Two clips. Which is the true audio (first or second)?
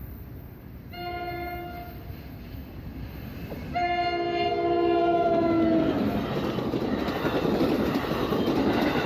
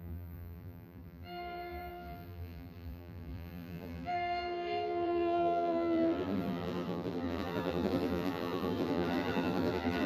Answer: first